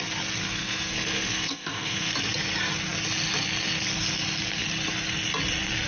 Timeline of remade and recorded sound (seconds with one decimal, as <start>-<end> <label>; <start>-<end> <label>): 0.0-0.4 recorded; 0.4-2.1 remade; 2.1-5.9 recorded